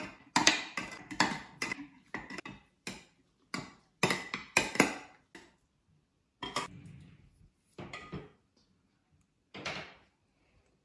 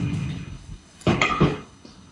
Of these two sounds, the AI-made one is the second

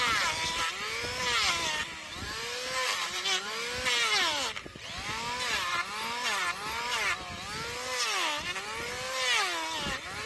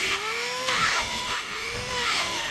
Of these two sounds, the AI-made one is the second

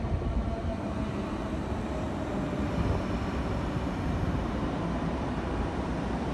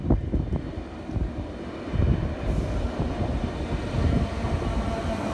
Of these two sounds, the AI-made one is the first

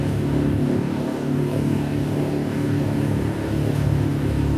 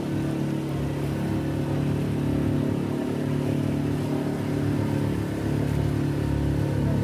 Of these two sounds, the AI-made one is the first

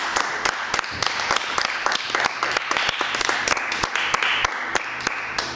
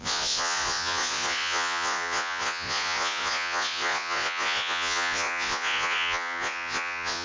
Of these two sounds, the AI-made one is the second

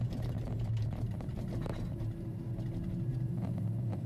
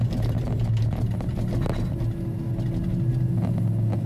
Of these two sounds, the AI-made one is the first